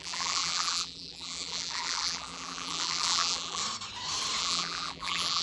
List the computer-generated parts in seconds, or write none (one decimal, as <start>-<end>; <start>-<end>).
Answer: 0.0-3.6; 4.4-5.4